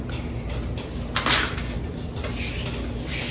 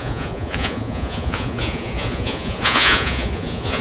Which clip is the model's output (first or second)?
second